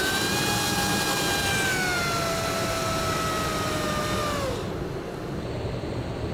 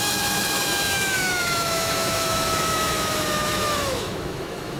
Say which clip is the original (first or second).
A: first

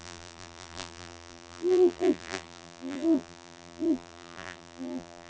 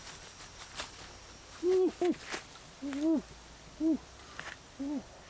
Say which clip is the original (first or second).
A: second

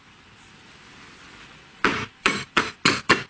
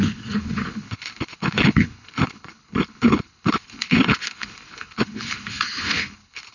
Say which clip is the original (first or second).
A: first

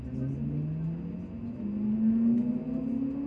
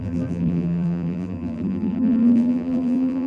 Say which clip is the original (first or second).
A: first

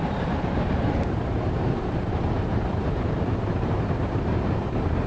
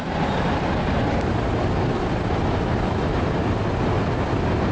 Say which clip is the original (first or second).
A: second